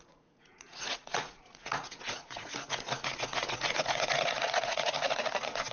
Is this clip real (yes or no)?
no